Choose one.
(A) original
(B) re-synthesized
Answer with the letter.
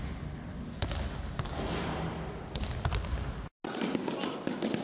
A